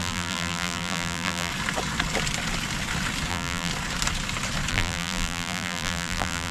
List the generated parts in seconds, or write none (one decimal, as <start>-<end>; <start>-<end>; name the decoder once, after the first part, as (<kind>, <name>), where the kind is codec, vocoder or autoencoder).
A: 0.0-1.5 (vocoder, BigVGAN v2); 3.3-3.7; 4.7-6.5